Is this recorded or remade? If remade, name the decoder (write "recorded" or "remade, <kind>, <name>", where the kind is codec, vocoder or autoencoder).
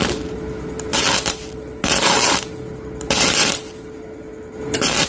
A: recorded